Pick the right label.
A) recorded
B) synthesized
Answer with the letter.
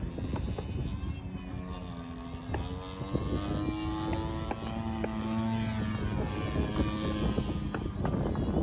A